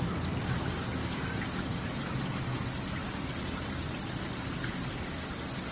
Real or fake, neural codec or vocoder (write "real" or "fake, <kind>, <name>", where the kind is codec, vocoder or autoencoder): real